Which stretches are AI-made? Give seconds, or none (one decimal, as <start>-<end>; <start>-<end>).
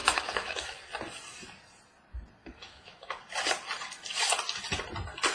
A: 0.0-0.8; 2.4-3.2